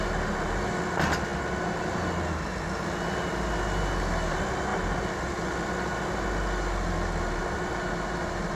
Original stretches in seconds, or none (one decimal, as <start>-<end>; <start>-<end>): 0.0-8.6